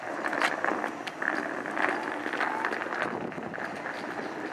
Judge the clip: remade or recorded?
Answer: recorded